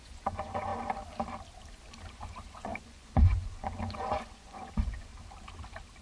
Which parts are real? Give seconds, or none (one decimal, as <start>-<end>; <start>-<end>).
0.7-2.1; 5.1-6.0